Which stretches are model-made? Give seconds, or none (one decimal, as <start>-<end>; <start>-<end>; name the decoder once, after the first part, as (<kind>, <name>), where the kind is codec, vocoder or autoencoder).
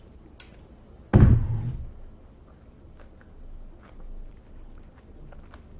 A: none